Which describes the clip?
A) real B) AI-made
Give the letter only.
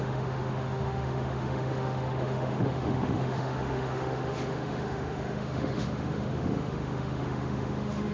B